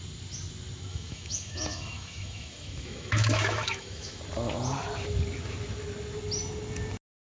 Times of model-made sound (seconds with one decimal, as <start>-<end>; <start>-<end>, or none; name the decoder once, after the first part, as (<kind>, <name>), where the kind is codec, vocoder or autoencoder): 0.9-4.2 (autoencoder, DAC-VAE)